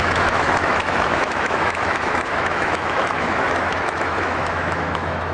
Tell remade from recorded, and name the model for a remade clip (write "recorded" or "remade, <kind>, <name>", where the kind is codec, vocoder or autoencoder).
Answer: remade, autoencoder, DAC-VAE